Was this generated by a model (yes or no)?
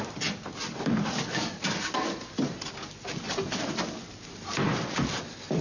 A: no